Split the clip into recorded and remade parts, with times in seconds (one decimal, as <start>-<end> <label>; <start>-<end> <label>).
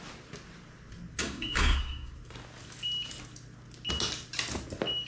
0.0-1.2 recorded; 1.2-2.1 remade; 2.1-5.1 recorded